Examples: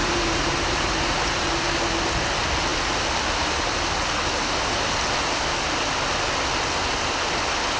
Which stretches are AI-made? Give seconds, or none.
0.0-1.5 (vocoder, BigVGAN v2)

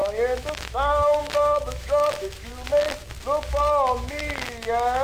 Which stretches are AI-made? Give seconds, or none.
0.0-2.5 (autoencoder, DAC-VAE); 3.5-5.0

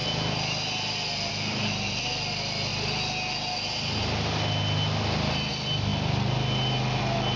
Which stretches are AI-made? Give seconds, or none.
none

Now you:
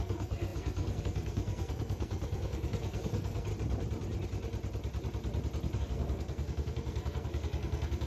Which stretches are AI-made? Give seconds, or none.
0.0-3.5 (codec, SNAC); 5.8-8.1

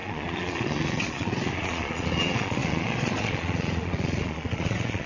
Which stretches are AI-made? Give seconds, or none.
0.0-5.1 (vocoder, Vocos)